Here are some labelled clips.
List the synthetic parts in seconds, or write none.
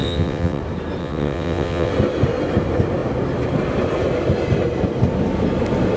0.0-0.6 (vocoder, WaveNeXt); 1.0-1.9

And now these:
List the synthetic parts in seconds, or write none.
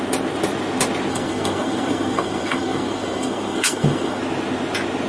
1.1-4.2 (codec, SNAC)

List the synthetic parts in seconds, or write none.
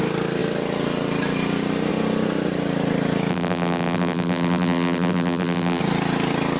3.3-5.8 (vocoder, BigVGAN v2)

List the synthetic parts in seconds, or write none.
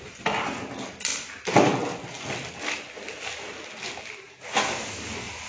none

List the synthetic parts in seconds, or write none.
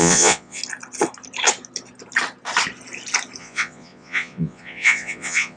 0.0-0.6 (vocoder, Vocos); 3.4-5.6